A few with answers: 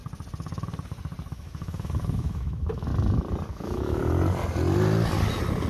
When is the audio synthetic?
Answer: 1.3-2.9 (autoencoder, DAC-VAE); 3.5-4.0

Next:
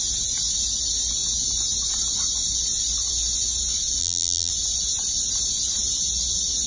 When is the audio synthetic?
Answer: 4.0-4.5 (vocoder, BigVGAN v2)